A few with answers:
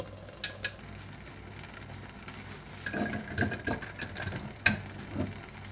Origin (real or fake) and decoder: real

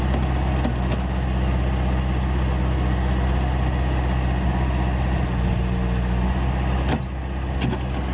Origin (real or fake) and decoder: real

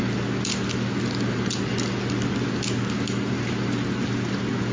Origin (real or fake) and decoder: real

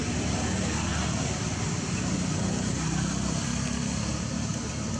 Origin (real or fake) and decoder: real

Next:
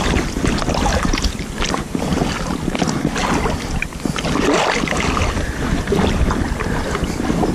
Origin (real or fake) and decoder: real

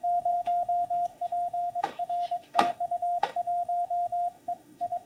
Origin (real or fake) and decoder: fake, autoencoder, DAC-VAE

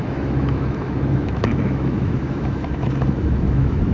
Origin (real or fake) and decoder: fake, autoencoder, DAC-VAE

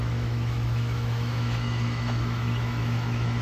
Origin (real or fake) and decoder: fake, autoencoder, DAC-VAE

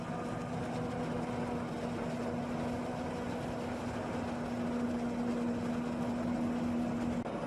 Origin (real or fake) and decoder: real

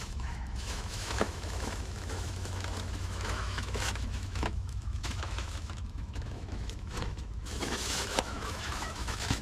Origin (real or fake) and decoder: fake, autoencoder, DAC-VAE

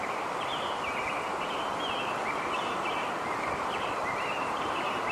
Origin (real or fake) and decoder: real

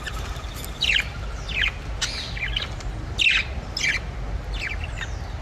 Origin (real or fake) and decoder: real